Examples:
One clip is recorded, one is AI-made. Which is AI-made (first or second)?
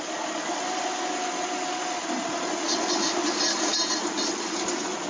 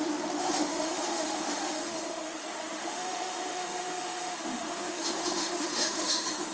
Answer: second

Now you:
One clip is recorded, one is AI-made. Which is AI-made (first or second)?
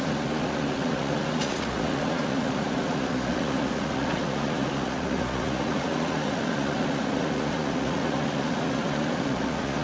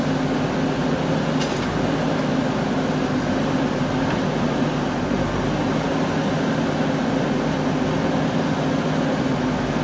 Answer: first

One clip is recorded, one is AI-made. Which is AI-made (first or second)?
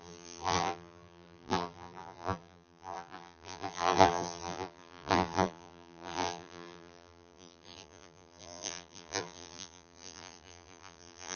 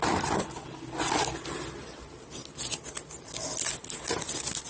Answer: first